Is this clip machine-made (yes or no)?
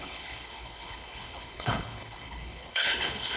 yes